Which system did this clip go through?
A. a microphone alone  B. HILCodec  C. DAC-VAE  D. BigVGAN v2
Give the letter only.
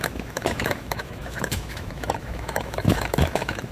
C